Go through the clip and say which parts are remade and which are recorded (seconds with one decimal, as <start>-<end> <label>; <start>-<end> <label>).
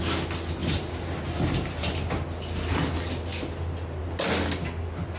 0.0-0.6 recorded; 0.6-1.9 remade; 1.9-5.2 recorded